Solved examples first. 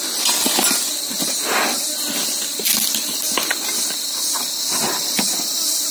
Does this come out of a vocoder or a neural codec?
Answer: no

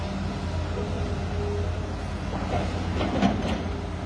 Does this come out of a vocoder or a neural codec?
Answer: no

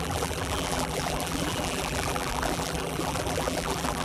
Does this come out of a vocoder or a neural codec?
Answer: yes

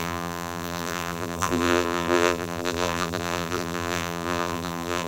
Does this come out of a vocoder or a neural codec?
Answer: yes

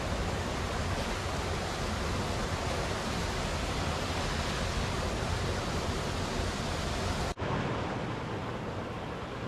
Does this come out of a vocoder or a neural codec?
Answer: no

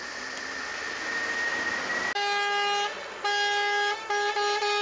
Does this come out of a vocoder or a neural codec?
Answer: no